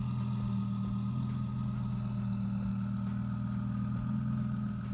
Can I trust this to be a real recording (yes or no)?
yes